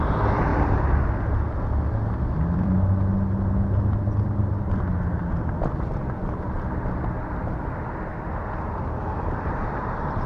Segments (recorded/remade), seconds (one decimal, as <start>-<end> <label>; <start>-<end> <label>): 0.0-0.5 remade; 0.5-2.3 recorded; 2.3-8.1 remade; 8.1-9.0 recorded; 9.0-10.3 remade